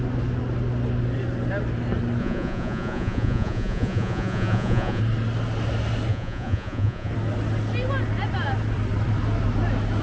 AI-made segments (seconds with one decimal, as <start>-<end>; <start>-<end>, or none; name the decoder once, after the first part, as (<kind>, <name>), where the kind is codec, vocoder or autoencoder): 2.2-5.0 (vocoder, Vocos); 6.1-7.1